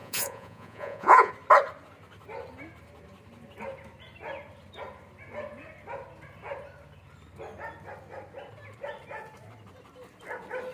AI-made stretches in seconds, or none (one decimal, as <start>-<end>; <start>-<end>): 0.0-1.3